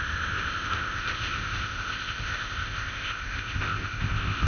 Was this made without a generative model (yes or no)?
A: no